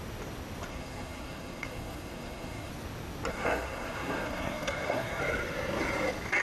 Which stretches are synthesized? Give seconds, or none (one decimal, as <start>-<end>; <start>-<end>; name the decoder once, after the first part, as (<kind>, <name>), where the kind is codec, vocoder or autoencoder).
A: 0.7-2.7 (codec, SNAC); 3.3-5.2